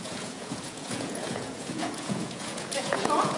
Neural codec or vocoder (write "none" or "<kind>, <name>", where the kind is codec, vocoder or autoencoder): vocoder, Vocos